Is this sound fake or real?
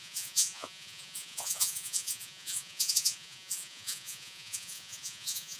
fake